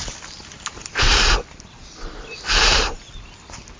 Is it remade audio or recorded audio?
recorded